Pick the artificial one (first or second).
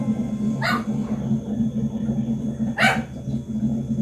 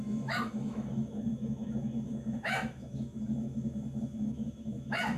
second